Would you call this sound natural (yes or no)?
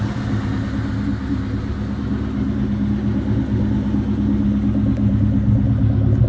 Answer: yes